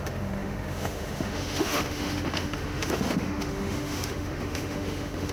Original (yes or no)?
no